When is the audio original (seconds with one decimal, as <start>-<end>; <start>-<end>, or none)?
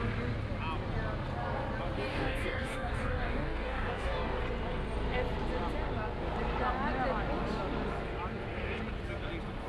0.0-2.1; 4.4-9.7